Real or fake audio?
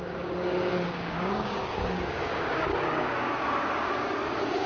fake